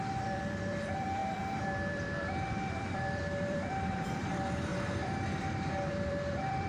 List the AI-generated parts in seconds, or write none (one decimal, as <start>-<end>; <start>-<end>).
0.0-4.7; 5.7-6.7